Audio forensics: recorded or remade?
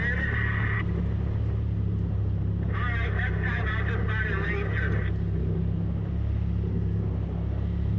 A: recorded